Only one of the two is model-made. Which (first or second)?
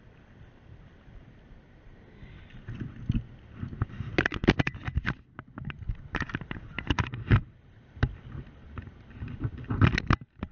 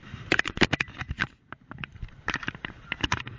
second